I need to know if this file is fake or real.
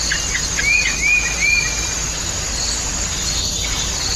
real